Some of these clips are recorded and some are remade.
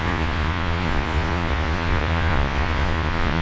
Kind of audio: remade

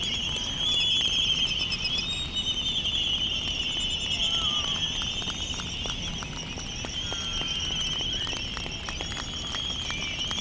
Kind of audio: recorded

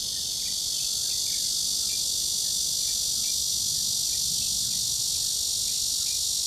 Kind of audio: recorded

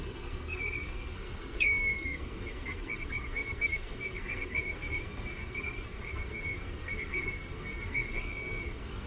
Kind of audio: remade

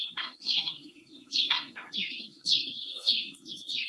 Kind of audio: remade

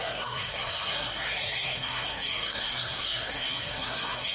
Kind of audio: remade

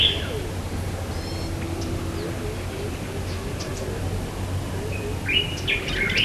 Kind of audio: recorded